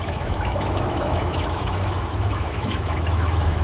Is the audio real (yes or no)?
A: no